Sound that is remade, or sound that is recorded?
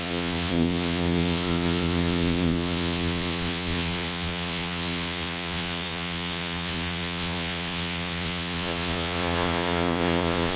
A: remade